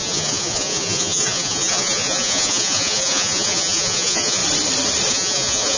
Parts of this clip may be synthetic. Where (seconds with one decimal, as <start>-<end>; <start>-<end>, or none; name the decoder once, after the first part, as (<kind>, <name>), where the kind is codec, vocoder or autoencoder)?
0.0-4.4 (vocoder, Vocos); 5.1-5.8